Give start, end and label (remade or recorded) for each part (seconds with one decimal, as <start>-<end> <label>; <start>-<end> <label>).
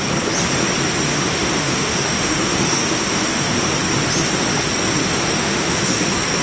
0.0-1.1 recorded; 1.1-3.7 remade; 3.7-5.1 recorded; 5.1-6.0 remade; 6.0-6.4 recorded